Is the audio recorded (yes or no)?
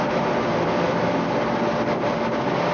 yes